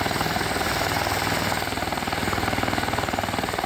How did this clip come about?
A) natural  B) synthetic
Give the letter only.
A